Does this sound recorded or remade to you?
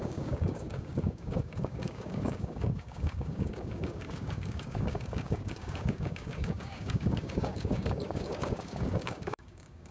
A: remade